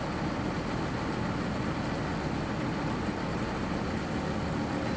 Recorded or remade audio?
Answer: recorded